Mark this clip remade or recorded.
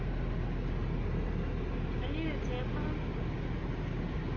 recorded